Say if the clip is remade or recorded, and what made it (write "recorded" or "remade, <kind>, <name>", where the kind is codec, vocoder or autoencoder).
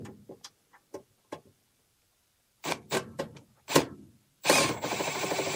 remade, vocoder, BigVGAN v2